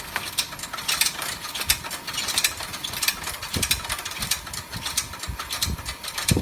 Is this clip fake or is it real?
fake